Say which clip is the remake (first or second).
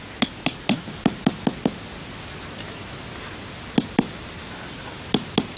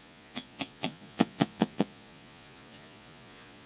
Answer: second